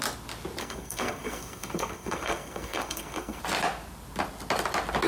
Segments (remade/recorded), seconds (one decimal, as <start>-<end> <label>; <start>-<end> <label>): 0.0-0.6 recorded; 0.6-3.4 remade; 3.4-5.1 recorded